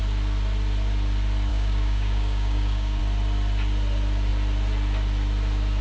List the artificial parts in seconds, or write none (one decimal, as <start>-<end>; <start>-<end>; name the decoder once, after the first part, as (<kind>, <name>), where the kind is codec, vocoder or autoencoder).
1.5-3.0 (codec, DAC)